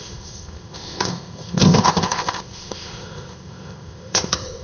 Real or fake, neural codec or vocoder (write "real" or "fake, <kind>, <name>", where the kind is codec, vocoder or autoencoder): fake, codec, ZipCodec